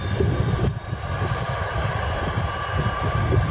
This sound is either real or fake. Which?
fake